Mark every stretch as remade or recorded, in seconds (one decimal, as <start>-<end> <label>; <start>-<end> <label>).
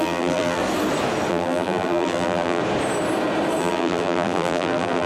0.0-0.6 remade; 0.6-1.3 recorded; 1.3-2.6 remade; 2.6-3.6 recorded; 3.6-5.1 remade